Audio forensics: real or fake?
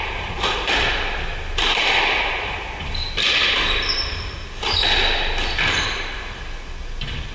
real